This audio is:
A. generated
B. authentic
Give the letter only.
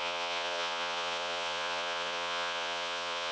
A